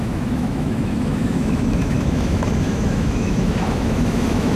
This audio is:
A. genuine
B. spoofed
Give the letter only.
B